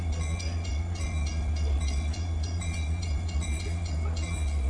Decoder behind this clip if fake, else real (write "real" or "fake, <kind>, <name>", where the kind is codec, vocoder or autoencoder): fake, vocoder, Vocos